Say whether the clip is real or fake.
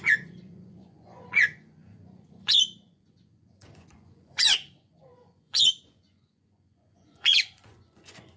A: fake